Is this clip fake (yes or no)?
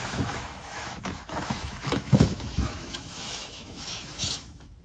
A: yes